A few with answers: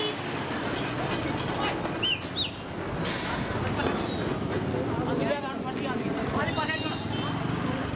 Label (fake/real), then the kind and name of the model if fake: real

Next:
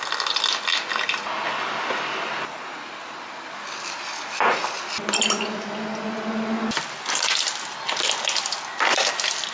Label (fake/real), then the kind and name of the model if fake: real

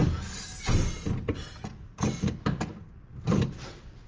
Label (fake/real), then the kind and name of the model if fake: real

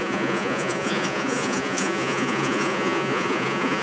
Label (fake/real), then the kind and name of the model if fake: fake, vocoder, Vocos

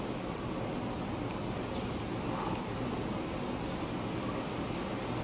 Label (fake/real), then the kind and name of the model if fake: real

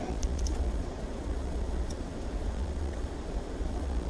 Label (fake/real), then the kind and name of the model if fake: fake, vocoder, Vocos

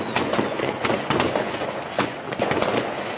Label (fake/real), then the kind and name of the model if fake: fake, vocoder, Vocos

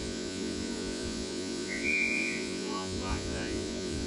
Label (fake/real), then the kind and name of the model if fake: fake, vocoder, Vocos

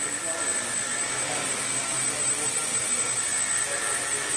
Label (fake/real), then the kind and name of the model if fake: real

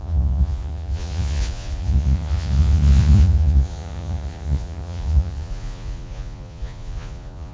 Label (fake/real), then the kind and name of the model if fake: fake, vocoder, Vocos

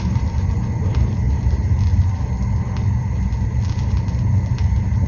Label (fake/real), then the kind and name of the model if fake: real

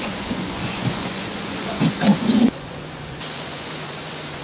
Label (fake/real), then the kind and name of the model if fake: fake, vocoder, Vocos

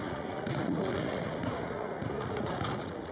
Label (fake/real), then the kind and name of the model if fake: fake, vocoder, Vocos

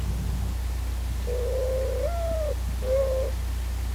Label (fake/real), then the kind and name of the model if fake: real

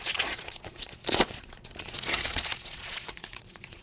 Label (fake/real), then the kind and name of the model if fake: fake, vocoder, Vocos